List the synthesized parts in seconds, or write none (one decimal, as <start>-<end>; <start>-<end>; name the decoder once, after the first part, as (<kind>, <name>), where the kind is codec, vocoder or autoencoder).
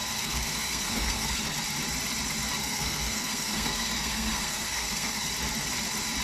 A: 0.0-1.4 (codec, SNAC); 2.6-5.3